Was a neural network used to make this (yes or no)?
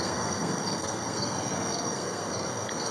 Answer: yes